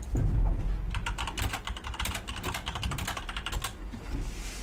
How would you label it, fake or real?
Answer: real